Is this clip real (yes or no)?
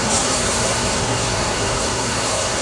no